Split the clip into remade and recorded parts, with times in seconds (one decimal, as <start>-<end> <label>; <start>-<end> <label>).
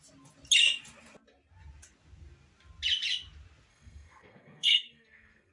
0.0-3.7 recorded; 3.7-5.5 remade